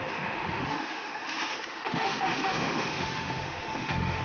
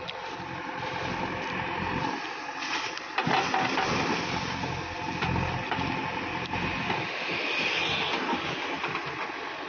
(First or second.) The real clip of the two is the second